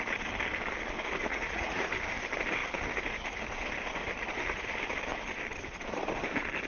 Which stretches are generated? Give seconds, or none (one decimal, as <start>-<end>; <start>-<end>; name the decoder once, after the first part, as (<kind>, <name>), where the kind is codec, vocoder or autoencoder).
1.3-1.9 (vocoder, Vocos)